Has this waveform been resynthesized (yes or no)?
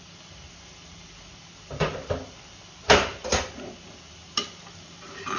no